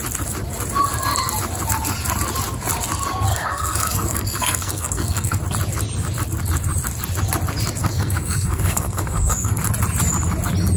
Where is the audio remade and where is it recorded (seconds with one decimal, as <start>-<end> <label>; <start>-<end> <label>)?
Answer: 0.0-3.3 recorded; 3.3-5.4 remade; 5.4-7.8 recorded; 7.8-9.6 remade; 9.6-10.8 recorded